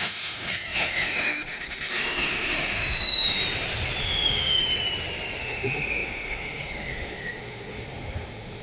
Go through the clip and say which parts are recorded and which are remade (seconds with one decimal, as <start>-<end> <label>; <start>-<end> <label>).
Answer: 0.0-3.4 remade; 3.4-4.0 recorded; 4.0-4.6 remade; 4.6-5.4 recorded; 5.4-8.6 remade